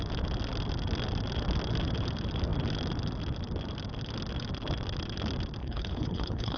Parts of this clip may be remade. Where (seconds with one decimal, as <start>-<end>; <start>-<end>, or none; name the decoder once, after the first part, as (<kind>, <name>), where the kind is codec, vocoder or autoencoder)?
5.6-6.6 (codec, HILCodec)